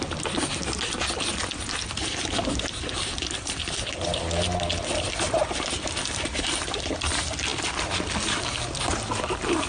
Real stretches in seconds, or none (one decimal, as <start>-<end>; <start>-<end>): 0.0-9.7